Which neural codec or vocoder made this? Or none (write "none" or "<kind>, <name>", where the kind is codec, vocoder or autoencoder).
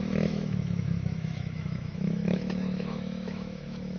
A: autoencoder, DAC-VAE